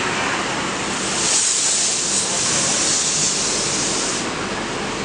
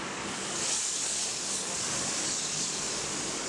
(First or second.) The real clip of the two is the first